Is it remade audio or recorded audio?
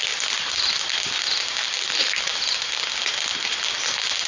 recorded